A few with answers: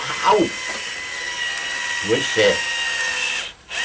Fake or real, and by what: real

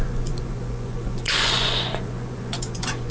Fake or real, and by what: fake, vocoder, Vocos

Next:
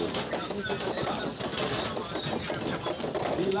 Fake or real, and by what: real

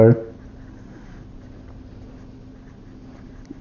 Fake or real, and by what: real